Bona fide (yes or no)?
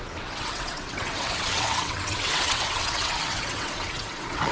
no